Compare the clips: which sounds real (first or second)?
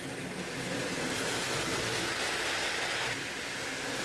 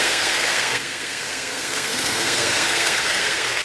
first